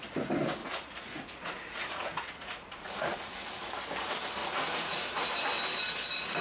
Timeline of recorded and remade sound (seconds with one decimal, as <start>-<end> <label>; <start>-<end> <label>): 0.0-0.6 recorded; 0.6-3.7 remade; 3.7-4.4 recorded; 4.4-5.3 remade; 5.3-6.4 recorded